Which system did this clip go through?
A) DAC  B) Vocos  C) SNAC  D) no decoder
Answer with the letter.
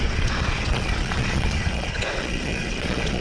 B